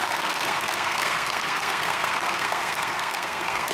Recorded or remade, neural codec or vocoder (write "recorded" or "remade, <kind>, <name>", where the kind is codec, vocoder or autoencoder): remade, codec, SNAC